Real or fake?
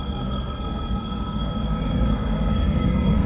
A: fake